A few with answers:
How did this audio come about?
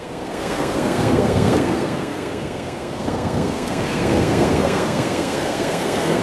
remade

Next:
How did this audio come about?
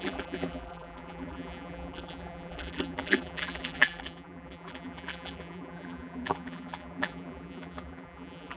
remade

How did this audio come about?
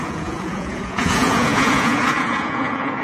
remade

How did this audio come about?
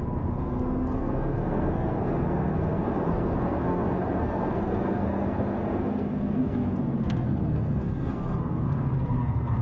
remade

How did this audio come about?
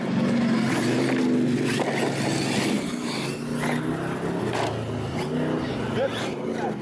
recorded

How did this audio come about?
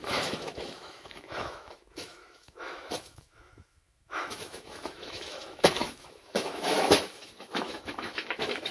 remade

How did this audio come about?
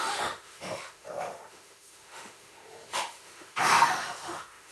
remade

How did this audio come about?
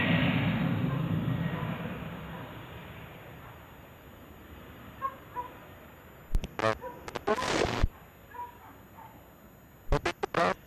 recorded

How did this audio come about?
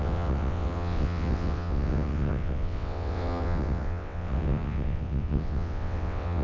remade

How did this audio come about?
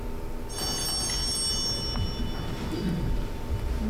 recorded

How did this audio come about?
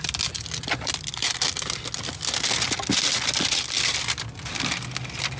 recorded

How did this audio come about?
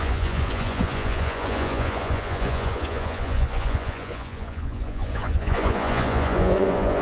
remade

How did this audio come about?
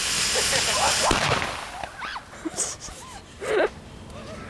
recorded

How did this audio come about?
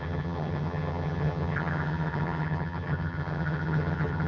remade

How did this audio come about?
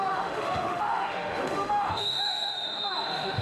remade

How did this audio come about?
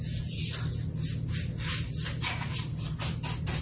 recorded